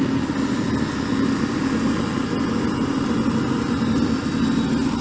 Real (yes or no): yes